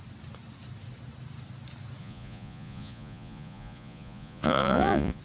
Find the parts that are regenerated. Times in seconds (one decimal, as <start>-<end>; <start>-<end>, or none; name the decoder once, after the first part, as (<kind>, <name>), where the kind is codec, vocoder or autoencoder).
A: 2.0-5.2 (vocoder, Vocos)